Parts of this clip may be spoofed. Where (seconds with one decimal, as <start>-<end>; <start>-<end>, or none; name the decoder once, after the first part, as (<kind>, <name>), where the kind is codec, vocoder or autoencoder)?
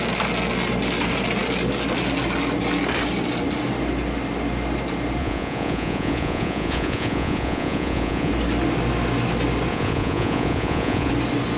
5.2-8.3 (vocoder, Vocos); 9.7-11.1